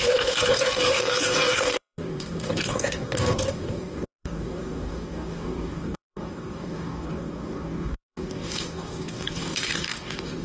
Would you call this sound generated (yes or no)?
yes